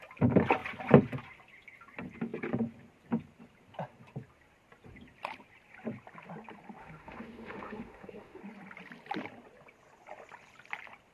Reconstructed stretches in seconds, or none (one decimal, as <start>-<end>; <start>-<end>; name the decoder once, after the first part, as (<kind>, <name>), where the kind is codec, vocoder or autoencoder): 6.8-8.4 (autoencoder, DAC-VAE)